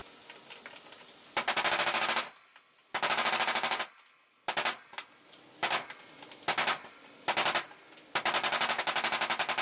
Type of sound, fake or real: real